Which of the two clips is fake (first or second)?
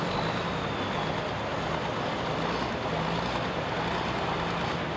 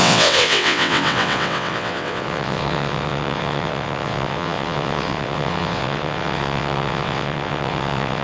second